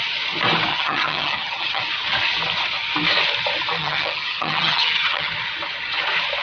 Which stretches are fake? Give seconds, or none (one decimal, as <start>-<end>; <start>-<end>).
0.7-1.8; 3.8-5.3